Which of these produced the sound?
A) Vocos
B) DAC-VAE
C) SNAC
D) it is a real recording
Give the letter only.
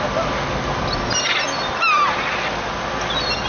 D